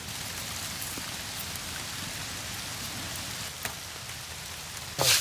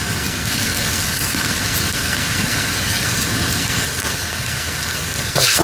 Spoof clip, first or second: second